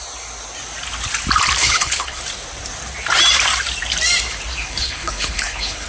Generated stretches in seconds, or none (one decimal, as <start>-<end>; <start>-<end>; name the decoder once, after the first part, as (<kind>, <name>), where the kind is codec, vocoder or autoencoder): 1.6-2.2 (codec, HILCodec); 4.6-5.9